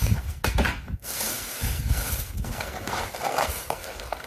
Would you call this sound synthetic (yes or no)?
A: yes